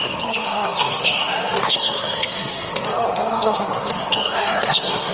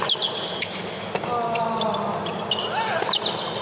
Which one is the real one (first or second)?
second